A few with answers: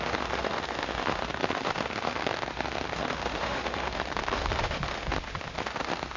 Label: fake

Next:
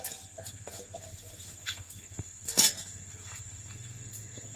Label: fake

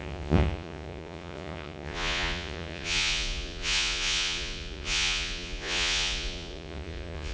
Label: fake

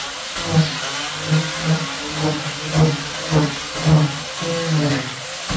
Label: real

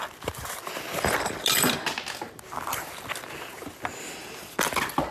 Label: real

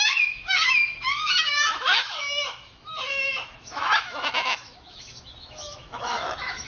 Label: fake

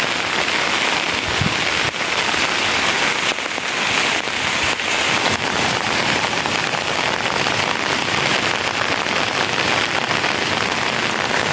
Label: real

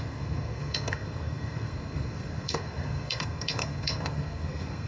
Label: fake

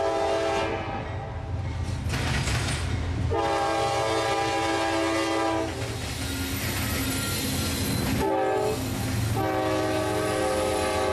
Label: real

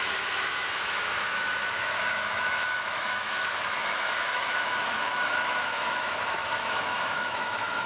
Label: fake